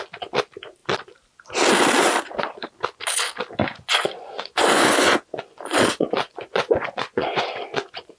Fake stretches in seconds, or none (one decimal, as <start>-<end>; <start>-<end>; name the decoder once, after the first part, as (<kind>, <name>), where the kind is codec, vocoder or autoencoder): 3.6-8.2 (vocoder, Vocos)